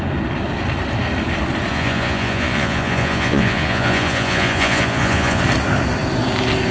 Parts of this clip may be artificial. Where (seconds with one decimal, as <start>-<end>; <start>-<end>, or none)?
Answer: 1.7-5.4